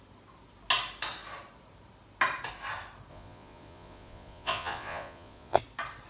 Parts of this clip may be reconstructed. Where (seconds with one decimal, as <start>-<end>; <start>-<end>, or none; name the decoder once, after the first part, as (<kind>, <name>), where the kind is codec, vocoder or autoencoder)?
3.1-5.6 (vocoder, Vocos)